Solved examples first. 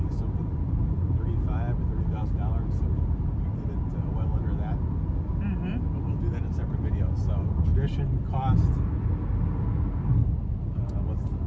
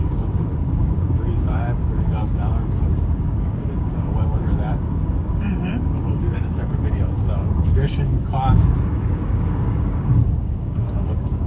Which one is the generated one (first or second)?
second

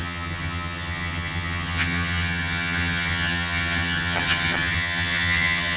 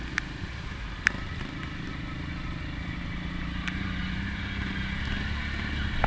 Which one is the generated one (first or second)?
first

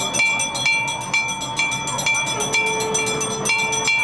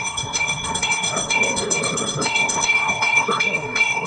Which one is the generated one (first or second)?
second